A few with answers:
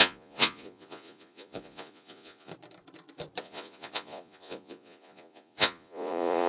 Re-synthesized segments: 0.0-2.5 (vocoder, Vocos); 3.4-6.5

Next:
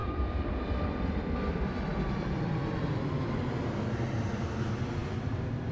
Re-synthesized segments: 0.0-3.4 (vocoder, BigVGAN v2)

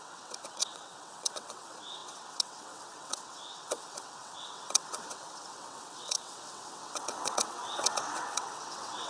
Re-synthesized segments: 0.0-9.1 (vocoder, WaveNeXt)

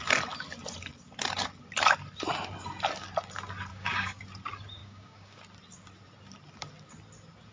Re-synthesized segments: 3.7-4.2 (codec, DAC); 4.8-5.4

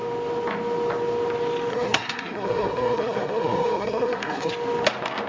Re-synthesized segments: 1.7-4.5 (codec, SNAC)

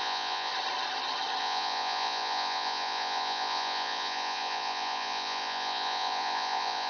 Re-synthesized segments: 0.0-0.5 (vocoder, Vocos); 1.4-6.9

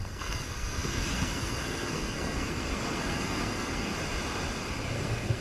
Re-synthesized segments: 0.0-3.9 (codec, SNAC); 4.9-5.4